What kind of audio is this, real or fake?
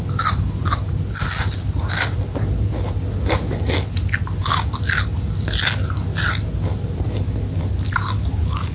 real